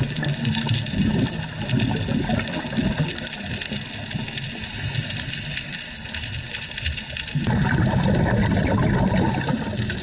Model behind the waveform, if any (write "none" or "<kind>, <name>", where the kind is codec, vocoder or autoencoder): none